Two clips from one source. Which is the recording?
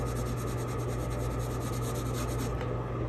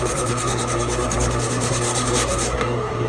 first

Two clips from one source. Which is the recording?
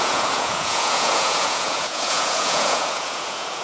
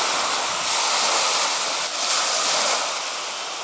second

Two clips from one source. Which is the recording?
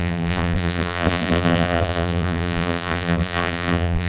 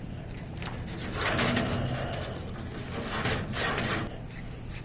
second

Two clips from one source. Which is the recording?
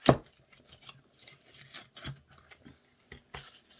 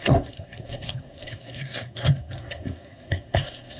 first